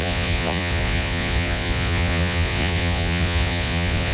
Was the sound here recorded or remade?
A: remade